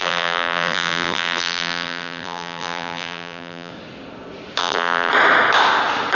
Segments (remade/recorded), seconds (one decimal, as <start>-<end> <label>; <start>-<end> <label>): 0.0-3.7 remade; 3.7-4.6 recorded; 4.6-5.1 remade; 5.1-6.1 recorded